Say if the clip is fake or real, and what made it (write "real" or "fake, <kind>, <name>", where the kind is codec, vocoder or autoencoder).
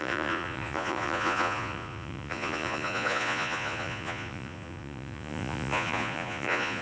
fake, vocoder, Vocos